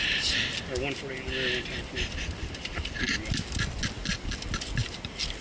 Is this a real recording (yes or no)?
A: yes